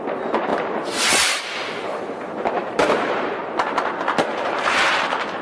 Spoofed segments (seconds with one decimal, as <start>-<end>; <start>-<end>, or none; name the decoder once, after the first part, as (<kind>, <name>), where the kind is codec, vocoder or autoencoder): 0.5-1.4 (vocoder, BigVGAN v2); 2.6-3.4; 4.3-4.9